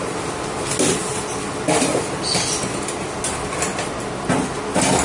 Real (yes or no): yes